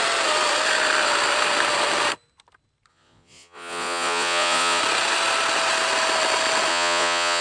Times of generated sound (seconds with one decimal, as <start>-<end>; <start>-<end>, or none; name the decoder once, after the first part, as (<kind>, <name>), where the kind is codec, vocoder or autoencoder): 2.9-4.8 (vocoder, Vocos); 6.7-7.4

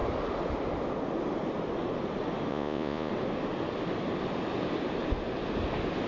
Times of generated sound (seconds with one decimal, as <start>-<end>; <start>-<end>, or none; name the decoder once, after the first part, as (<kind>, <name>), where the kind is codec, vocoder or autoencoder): 2.5-3.1 (vocoder, Vocos)

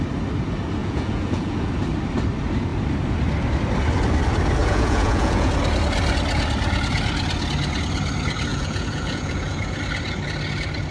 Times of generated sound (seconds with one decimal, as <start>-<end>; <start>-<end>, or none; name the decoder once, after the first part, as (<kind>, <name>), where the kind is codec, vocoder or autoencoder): 0.8-1.7 (vocoder, Vocos); 4.6-5.5; 8.5-9.8

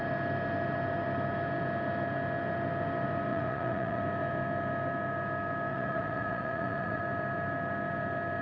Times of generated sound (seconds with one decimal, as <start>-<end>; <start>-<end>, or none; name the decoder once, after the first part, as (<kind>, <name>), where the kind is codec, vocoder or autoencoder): 3.3-4.0 (vocoder, Vocos); 5.7-7.0

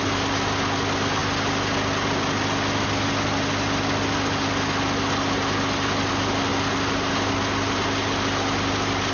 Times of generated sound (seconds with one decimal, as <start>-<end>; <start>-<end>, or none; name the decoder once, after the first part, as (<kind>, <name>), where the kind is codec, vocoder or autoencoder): none